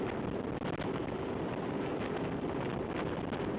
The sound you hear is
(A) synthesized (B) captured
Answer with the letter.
B